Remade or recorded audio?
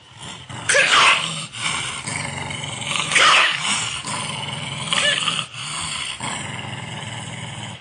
remade